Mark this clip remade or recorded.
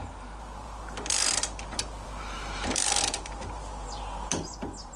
remade